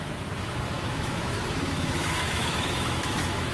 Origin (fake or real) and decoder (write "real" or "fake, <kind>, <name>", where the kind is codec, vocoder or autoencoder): fake, autoencoder, DAC-VAE